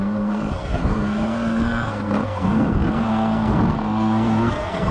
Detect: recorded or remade remade